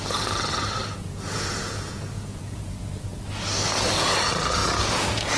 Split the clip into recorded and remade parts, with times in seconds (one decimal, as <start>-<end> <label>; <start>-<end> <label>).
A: 0.0-0.8 recorded; 0.8-3.1 remade; 3.1-4.6 recorded; 4.6-5.4 remade

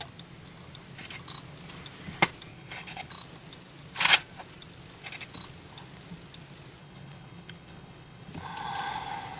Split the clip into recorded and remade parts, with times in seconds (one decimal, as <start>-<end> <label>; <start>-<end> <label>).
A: 0.0-2.5 recorded; 2.5-3.1 remade; 3.1-6.8 recorded; 6.8-8.3 remade; 8.3-9.4 recorded